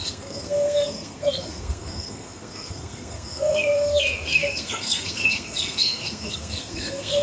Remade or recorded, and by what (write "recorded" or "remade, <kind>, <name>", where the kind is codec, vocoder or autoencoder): remade, codec, SNAC